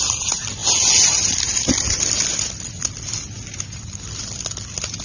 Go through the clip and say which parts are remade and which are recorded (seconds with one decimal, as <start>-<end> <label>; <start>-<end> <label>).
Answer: 0.0-5.0 recorded

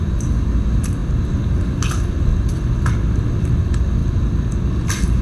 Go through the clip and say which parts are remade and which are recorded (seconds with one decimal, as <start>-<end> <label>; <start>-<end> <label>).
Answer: 0.0-5.2 recorded

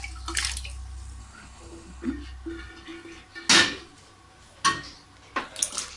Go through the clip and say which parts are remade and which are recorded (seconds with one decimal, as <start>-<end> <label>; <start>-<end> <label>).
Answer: 0.0-1.2 recorded; 1.2-2.1 remade; 2.1-6.0 recorded

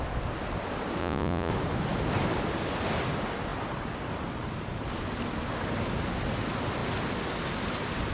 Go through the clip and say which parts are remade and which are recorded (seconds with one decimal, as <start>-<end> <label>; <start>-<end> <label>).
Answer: 0.0-1.0 recorded; 1.0-1.5 remade; 1.5-8.1 recorded